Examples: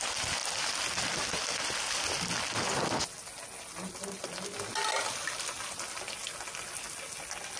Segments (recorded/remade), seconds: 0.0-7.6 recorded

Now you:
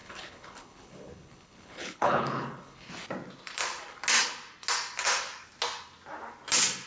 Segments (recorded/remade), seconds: 0.0-2.9 remade; 2.9-6.9 recorded

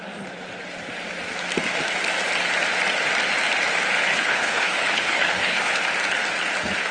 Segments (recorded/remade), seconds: 0.0-4.1 recorded; 4.1-5.8 remade; 5.8-6.9 recorded

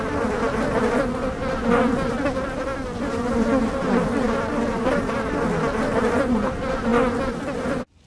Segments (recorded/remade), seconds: 0.0-8.1 recorded

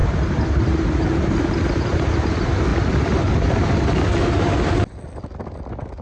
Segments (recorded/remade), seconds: 0.0-6.0 recorded

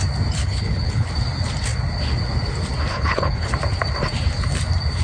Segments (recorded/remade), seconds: 0.0-0.4 recorded; 0.4-1.1 remade; 1.1-2.9 recorded; 2.9-3.5 remade; 3.5-5.0 recorded

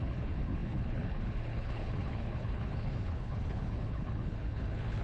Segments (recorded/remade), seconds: 0.0-5.0 remade